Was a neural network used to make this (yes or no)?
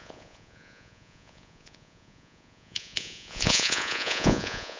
yes